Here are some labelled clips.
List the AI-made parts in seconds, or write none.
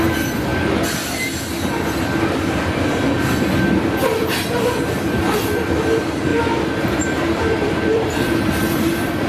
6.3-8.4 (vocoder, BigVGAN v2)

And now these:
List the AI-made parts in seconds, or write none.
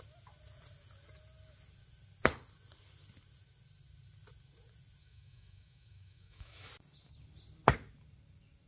5.0-6.7 (autoencoder, DAC-VAE)